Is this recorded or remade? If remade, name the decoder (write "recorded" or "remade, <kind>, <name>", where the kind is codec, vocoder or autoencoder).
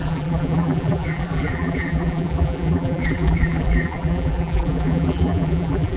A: remade, vocoder, BigVGAN v2